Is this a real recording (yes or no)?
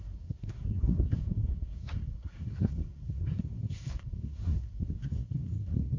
no